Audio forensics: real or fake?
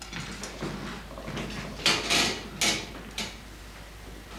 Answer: real